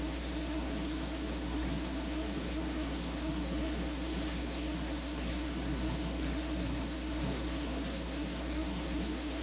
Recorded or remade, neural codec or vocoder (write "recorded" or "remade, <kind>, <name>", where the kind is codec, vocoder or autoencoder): remade, codec, SNAC